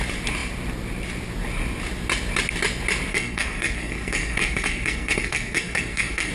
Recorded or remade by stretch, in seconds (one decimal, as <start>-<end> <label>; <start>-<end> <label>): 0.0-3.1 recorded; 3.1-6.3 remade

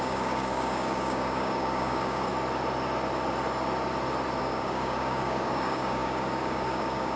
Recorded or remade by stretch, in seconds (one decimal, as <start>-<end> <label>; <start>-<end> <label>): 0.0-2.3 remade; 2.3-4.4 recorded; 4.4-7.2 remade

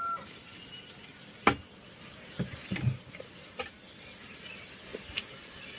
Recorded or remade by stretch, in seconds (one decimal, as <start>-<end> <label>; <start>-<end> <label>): 0.0-5.8 recorded